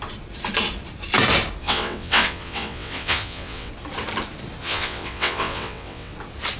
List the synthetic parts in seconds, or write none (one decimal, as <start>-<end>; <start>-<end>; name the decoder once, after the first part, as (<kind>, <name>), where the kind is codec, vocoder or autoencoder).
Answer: 1.6-3.7 (vocoder, WaveNeXt); 4.6-6.1